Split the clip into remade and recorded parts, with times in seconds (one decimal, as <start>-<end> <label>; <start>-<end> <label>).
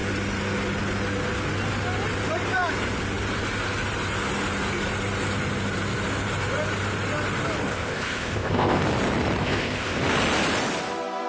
0.0-7.7 recorded; 7.7-8.8 remade; 8.8-9.4 recorded; 9.4-10.0 remade; 10.0-11.3 recorded